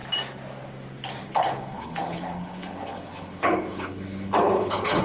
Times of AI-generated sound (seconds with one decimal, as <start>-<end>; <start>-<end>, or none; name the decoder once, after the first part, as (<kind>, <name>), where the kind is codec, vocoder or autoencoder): 1.2-5.0 (codec, HILCodec)